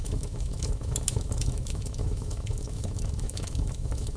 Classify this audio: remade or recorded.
remade